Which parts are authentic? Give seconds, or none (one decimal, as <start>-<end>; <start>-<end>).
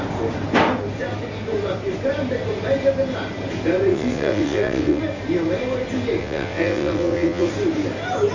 0.0-3.9; 5.0-6.2; 7.5-8.3